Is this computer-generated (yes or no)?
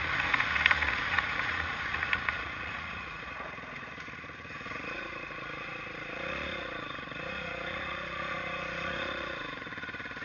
yes